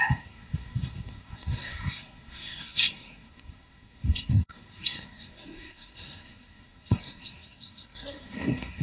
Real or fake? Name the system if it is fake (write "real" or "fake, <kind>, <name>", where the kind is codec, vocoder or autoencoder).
fake, codec, SNAC